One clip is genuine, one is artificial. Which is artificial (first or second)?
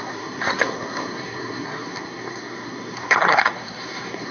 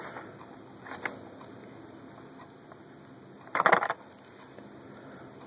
first